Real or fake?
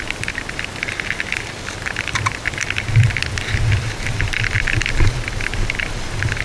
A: real